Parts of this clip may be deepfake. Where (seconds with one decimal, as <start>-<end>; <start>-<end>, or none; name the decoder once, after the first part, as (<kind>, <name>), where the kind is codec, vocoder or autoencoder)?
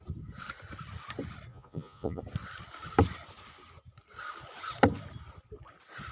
1.5-2.2 (vocoder, Vocos)